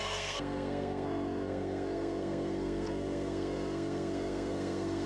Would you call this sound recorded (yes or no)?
no